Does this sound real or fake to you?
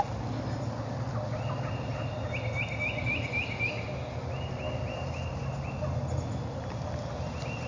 real